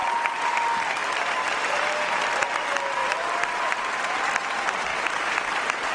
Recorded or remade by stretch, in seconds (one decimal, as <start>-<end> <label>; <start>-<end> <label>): 0.0-3.0 recorded; 3.0-3.7 remade; 3.7-5.9 recorded